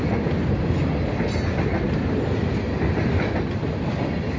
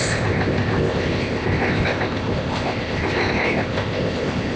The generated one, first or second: second